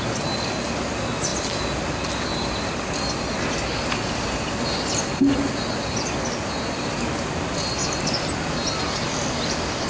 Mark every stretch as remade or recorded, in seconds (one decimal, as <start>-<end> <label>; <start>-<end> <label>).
0.0-9.9 recorded